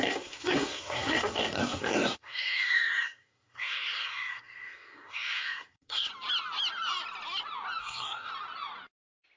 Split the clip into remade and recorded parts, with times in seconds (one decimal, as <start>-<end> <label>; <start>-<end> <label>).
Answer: 0.0-6.1 remade; 6.1-7.8 recorded; 7.8-8.3 remade; 8.3-9.4 recorded